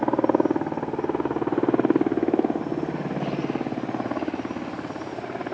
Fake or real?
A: real